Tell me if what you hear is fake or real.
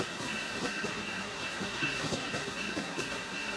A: fake